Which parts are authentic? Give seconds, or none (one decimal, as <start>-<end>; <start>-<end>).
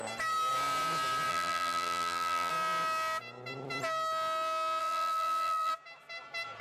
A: 0.0-1.3; 2.5-4.8; 5.7-6.6